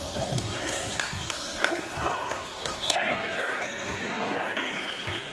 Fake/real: fake